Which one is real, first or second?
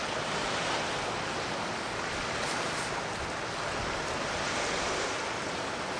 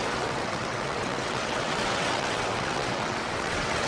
first